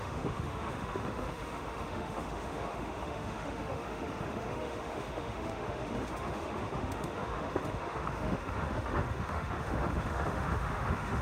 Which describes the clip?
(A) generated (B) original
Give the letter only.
A